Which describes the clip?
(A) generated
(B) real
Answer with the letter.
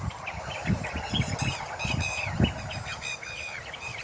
B